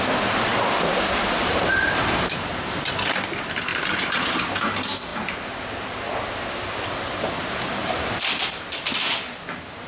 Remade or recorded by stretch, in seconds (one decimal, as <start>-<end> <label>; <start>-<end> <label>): 0.0-0.5 recorded; 0.5-2.6 remade; 2.6-3.7 recorded; 3.7-4.4 remade; 4.4-7.8 recorded; 7.8-8.6 remade; 8.6-9.9 recorded